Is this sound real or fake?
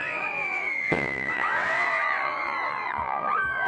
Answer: fake